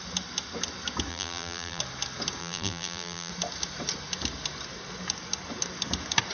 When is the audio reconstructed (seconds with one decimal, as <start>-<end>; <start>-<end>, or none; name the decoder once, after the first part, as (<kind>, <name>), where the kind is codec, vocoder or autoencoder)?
1.1-1.8 (vocoder, BigVGAN v2); 2.4-3.3